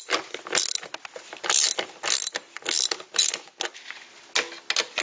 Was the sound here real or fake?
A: real